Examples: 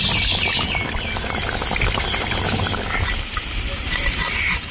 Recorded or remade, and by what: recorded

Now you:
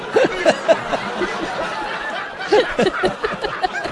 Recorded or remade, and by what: recorded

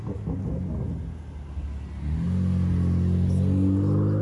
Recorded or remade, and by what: recorded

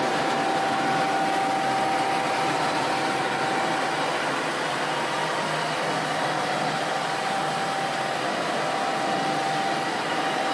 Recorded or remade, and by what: recorded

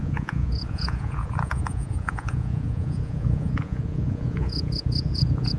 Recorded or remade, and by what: remade, vocoder, Vocos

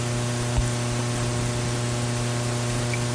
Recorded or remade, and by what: recorded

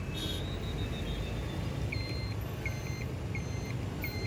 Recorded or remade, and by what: recorded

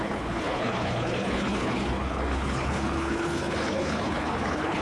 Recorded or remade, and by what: remade, codec, HILCodec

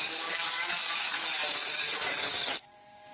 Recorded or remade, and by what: remade, codec, DAC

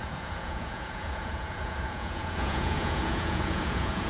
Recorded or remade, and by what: remade, vocoder, Vocos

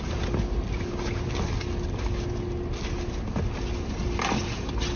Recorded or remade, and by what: recorded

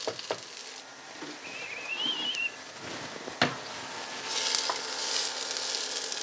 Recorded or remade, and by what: recorded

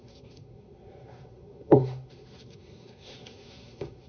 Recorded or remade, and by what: remade, codec, SNAC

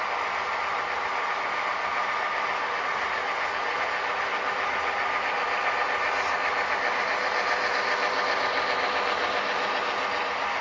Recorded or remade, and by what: recorded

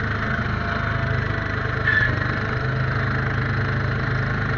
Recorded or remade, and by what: recorded